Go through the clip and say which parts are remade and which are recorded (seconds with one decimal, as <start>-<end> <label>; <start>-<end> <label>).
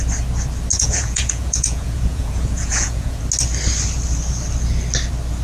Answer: 0.0-0.7 recorded; 0.7-3.2 remade; 3.2-5.4 recorded